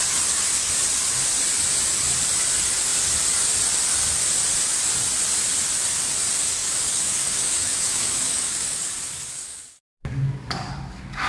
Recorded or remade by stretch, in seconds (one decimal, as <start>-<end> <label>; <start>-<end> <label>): 0.0-6.6 recorded; 6.6-11.3 remade